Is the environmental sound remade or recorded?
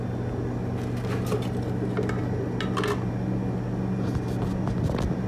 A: recorded